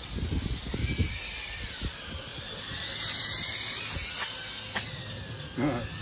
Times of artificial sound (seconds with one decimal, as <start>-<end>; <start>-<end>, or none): none